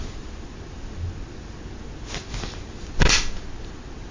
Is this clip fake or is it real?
real